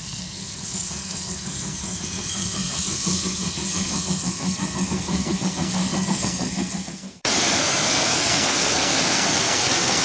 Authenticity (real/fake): fake